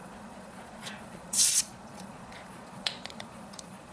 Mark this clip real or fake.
fake